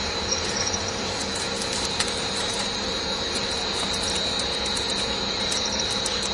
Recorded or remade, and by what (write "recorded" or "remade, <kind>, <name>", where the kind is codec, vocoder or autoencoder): remade, vocoder, BigVGAN v2